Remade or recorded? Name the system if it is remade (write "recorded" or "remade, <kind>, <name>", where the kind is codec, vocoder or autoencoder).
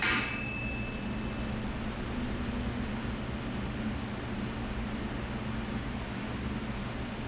recorded